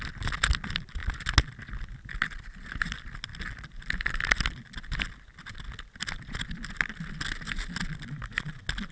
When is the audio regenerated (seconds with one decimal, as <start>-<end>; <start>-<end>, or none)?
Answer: none